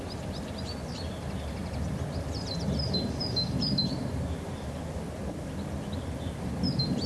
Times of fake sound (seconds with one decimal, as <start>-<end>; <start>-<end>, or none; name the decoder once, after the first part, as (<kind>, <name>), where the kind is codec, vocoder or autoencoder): none